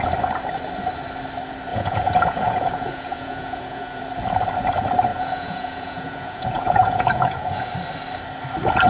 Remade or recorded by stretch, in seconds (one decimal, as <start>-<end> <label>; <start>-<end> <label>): 0.0-1.7 recorded; 1.7-4.0 remade; 4.0-5.1 recorded; 5.1-7.7 remade; 7.7-8.9 recorded